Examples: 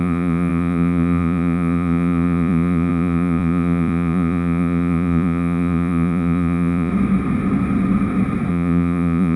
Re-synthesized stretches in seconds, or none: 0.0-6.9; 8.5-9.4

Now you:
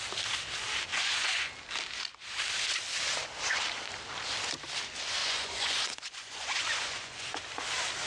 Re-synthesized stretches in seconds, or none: 0.9-1.5; 5.2-7.4

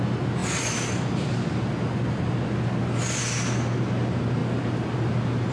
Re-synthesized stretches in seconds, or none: none

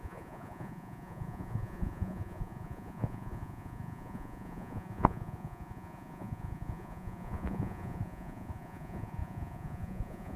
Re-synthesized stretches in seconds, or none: 0.0-10.4

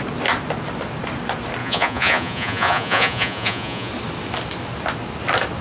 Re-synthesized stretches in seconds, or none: 1.6-3.9

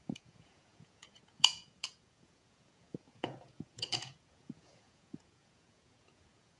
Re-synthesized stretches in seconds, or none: 0.0-6.6

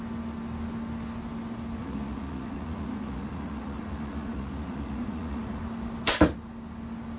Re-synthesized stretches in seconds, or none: 1.8-5.6

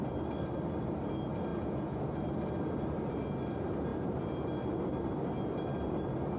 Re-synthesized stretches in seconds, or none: 1.5-2.0